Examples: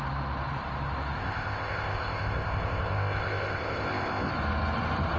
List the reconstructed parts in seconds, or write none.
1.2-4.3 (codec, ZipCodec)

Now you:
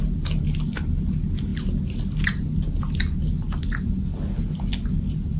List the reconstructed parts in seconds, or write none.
none